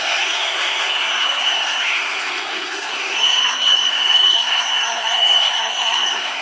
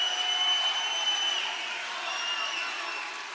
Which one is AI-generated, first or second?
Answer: first